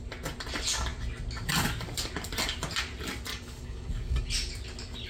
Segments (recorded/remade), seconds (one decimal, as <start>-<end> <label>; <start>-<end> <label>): 0.0-3.3 recorded; 3.3-4.3 remade; 4.3-5.1 recorded